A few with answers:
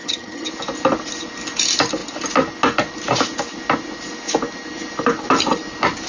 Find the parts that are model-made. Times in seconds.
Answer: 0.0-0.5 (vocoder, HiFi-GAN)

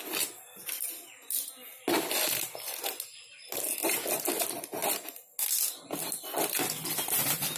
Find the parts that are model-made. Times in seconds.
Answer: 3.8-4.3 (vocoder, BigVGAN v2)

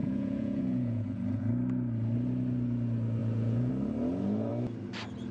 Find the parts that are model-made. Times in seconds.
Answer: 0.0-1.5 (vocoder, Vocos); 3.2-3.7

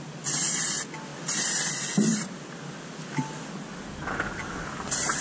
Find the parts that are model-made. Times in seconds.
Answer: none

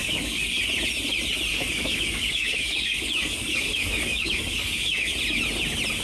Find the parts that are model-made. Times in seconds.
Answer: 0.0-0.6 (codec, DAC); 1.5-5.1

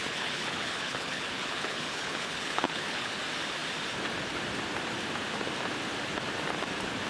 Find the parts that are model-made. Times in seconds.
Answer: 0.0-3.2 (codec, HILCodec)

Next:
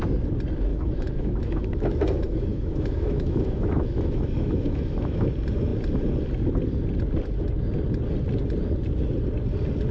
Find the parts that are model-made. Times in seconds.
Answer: 0.7-5.3 (autoencoder, DAC-VAE)